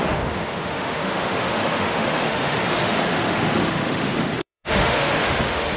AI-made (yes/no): yes